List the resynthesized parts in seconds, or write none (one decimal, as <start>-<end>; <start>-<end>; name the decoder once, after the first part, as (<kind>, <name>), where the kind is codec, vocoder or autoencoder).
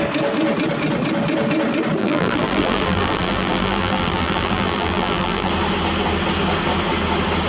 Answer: 2.0-5.5 (vocoder, BigVGAN v2)